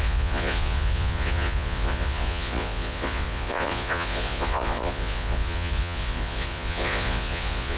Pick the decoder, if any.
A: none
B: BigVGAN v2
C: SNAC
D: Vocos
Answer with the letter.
D